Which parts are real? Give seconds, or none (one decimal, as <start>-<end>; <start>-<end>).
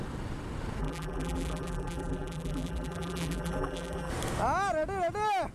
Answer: 0.0-0.8; 4.1-5.5